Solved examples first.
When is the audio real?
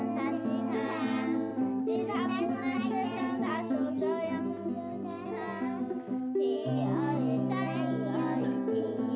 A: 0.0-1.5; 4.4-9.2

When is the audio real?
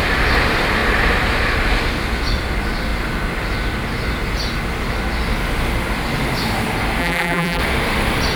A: 0.0-7.0; 7.6-8.4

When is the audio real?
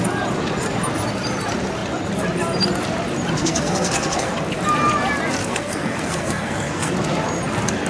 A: 0.0-3.4; 4.3-5.4; 6.9-7.9